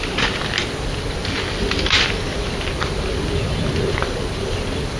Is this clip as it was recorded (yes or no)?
yes